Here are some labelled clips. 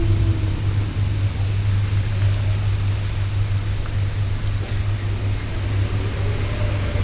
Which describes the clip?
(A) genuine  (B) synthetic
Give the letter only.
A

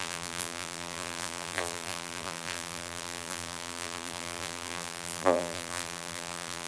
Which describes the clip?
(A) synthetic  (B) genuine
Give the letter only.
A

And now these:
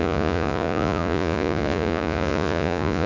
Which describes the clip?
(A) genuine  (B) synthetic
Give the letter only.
B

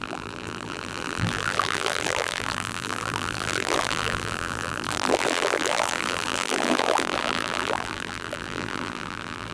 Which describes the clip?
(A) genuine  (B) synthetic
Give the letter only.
B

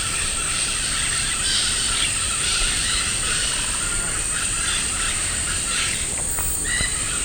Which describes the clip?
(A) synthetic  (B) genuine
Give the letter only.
A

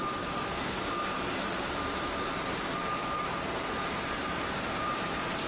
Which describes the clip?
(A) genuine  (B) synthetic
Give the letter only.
B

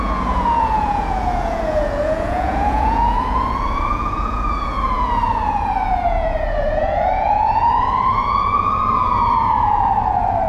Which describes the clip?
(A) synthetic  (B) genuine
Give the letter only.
A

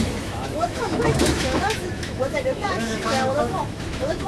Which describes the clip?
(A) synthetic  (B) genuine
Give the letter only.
A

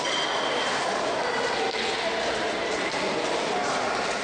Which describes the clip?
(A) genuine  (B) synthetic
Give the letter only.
A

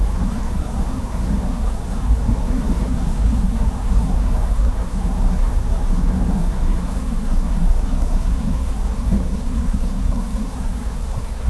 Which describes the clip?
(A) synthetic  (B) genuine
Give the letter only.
A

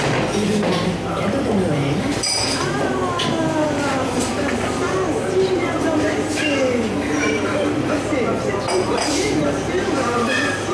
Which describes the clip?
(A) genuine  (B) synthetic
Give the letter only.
B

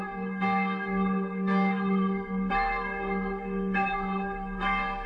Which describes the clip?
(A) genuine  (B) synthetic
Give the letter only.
B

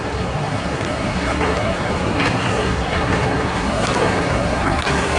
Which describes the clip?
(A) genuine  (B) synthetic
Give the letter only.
B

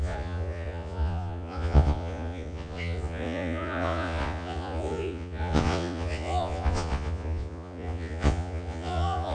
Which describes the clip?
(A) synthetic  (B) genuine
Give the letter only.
A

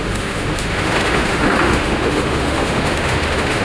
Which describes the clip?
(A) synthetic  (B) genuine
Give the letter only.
A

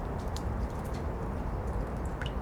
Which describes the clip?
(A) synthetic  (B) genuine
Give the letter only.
A